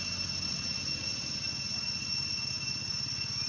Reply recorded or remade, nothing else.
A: recorded